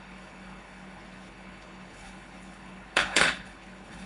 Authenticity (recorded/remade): remade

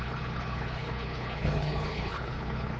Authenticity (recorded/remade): remade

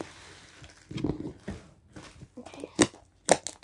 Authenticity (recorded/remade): recorded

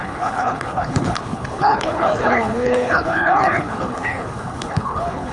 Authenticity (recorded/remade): remade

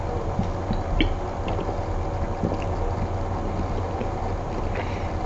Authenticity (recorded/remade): recorded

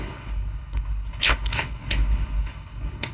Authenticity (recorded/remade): remade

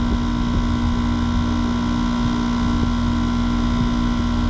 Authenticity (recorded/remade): recorded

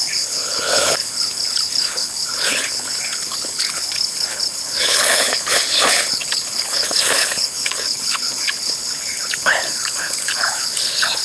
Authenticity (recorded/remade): remade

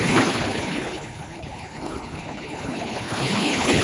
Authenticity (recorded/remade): remade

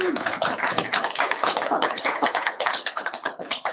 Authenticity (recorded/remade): remade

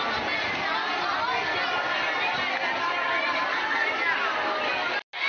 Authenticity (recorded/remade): recorded